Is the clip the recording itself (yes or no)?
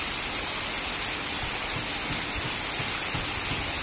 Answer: yes